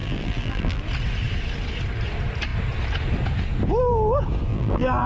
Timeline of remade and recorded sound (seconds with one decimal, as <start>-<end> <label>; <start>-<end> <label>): 0.0-0.8 remade; 0.8-4.5 recorded; 4.5-5.1 remade